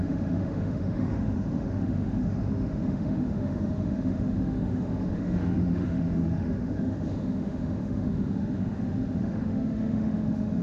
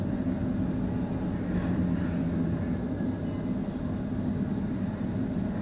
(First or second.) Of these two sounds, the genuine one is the second